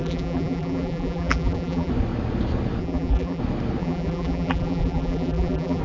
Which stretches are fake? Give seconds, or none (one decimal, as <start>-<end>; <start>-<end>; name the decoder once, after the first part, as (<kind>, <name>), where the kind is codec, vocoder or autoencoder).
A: 0.0-1.9 (vocoder, BigVGAN v2); 2.8-3.4; 3.8-5.8